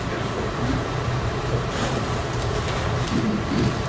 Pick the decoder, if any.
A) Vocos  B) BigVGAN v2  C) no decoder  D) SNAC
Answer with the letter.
B